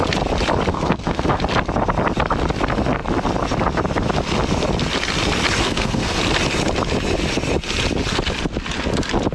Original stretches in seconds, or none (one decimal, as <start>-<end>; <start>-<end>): 0.0-0.7; 1.4-5.6; 6.2-9.3